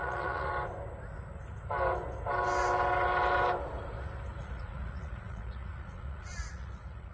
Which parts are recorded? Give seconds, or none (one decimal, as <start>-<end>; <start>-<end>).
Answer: 0.5-4.4